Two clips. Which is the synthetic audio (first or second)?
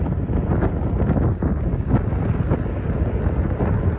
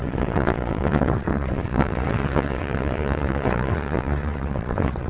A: second